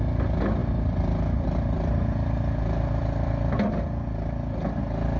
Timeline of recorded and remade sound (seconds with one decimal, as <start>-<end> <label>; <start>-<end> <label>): 0.0-5.2 recorded